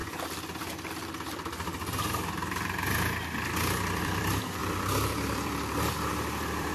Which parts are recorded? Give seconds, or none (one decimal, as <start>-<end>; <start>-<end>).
0.0-4.0

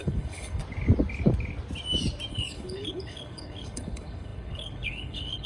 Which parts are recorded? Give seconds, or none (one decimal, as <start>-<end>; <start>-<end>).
0.6-2.3